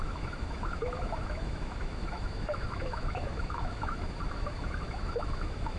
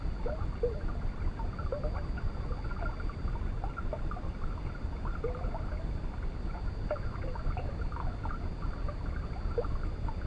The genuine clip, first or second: second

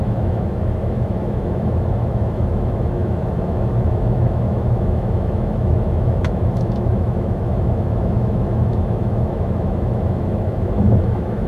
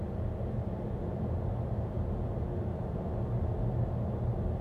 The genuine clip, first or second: second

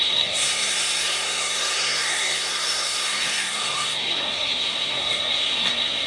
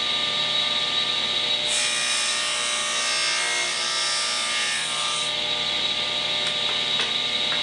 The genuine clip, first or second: second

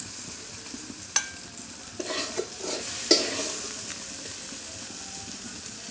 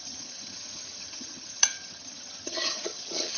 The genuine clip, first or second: first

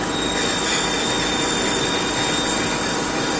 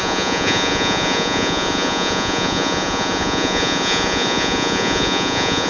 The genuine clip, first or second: first